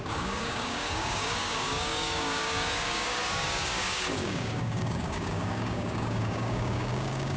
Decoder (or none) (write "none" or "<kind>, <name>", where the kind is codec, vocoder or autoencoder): codec, DAC